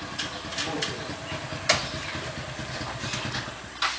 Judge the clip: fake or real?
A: real